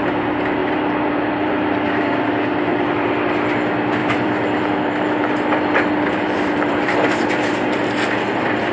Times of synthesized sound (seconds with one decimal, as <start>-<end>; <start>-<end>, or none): 0.6-2.3; 2.7-3.3; 4.0-7.1